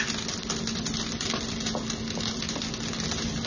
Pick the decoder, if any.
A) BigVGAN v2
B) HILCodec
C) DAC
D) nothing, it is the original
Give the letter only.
D